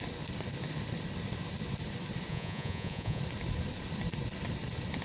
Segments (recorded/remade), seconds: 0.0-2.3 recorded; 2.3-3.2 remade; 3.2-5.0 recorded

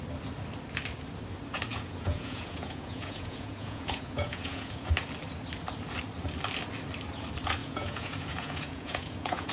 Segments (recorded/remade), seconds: 0.0-1.7 recorded; 1.7-4.9 remade; 4.9-7.6 recorded; 7.6-9.5 remade

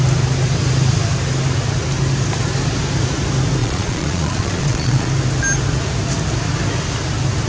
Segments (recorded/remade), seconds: 0.0-3.6 recorded; 3.6-5.1 remade; 5.1-7.5 recorded